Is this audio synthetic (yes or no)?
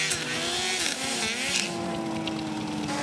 no